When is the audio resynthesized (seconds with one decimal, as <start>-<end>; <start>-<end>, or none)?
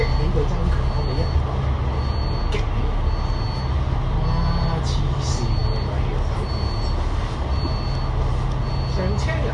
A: none